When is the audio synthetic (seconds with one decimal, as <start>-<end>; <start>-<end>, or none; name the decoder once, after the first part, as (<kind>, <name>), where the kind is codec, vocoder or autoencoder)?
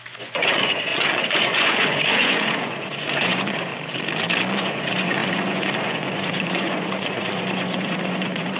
0.0-3.7 (vocoder, Vocos); 4.6-8.6